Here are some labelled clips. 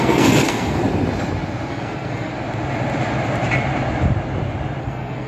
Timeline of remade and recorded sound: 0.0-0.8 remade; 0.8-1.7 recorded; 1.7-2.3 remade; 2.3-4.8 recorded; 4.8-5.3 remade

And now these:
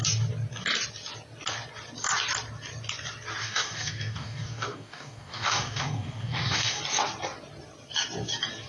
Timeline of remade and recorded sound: 0.0-3.4 recorded; 3.4-6.8 remade; 6.8-8.7 recorded

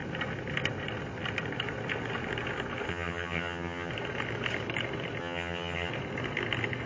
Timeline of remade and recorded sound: 0.0-2.9 recorded; 2.9-3.9 remade; 3.9-5.2 recorded; 5.2-5.9 remade; 5.9-6.9 recorded

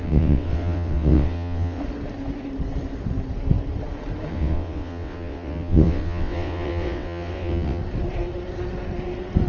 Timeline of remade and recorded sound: 0.0-1.8 remade; 1.8-4.3 recorded; 4.3-7.8 remade; 7.8-9.5 recorded

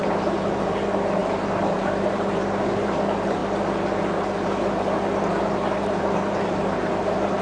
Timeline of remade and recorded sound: 0.0-3.4 remade; 3.4-6.0 recorded; 6.0-7.4 remade

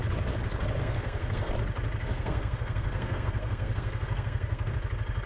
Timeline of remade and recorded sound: 0.0-0.8 recorded; 0.8-1.5 remade; 1.5-2.0 recorded; 2.0-4.7 remade; 4.7-5.3 recorded

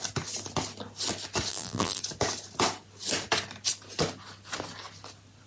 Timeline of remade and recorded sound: 0.0-1.5 recorded; 1.5-2.0 remade; 2.0-5.5 recorded

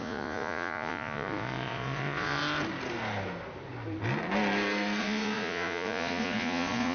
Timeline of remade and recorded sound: 0.0-2.4 remade; 2.4-5.0 recorded; 5.0-6.9 remade